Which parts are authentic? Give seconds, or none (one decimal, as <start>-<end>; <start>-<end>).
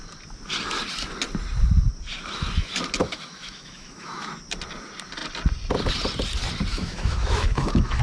0.0-3.0; 4.3-6.7